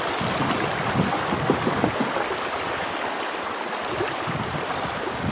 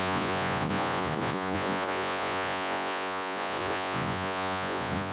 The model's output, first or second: second